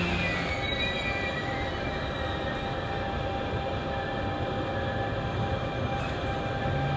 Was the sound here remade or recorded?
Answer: recorded